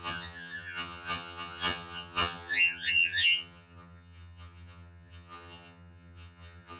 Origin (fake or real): fake